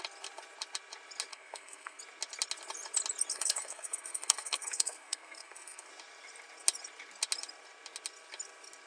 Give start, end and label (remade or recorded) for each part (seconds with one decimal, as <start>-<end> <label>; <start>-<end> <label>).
0.0-1.3 recorded; 1.3-2.0 remade; 2.0-3.3 recorded; 3.3-5.9 remade; 5.9-8.9 recorded